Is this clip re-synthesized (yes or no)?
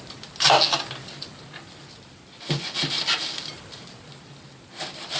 no